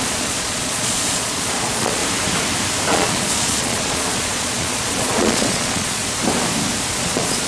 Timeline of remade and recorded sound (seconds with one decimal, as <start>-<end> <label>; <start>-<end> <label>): 0.0-2.0 remade; 2.0-2.9 recorded; 2.9-6.0 remade; 6.0-7.0 recorded; 7.0-7.5 remade